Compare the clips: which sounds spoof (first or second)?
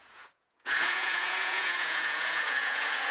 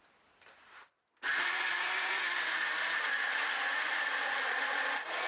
first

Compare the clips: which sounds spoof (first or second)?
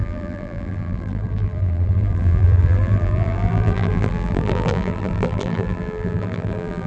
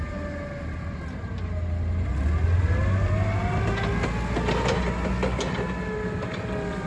first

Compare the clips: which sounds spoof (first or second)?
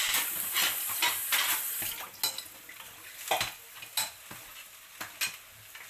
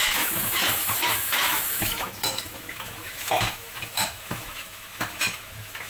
second